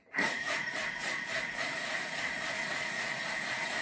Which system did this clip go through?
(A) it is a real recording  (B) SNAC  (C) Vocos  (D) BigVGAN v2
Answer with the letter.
C